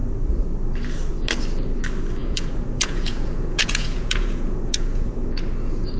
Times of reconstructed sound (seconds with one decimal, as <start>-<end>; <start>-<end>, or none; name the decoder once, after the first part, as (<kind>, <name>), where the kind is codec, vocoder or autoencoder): 2.2-5.2 (vocoder, Vocos)